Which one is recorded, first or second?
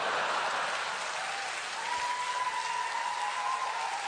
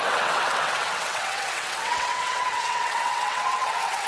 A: first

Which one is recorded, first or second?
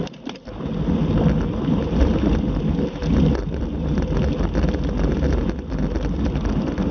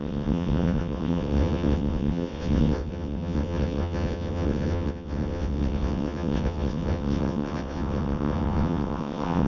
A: first